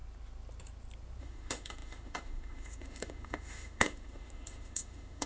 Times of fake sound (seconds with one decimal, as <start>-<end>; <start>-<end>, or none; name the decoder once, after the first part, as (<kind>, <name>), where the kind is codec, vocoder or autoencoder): 1.2-5.3 (autoencoder, DAC-VAE)